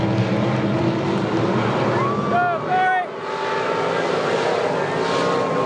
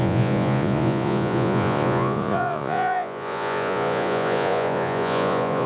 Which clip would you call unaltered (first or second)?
first